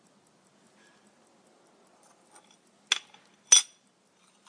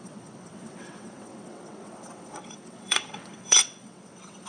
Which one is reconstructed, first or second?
second